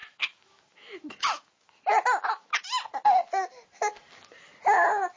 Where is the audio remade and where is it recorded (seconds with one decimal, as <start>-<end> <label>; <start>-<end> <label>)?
0.0-2.6 remade; 2.6-5.2 recorded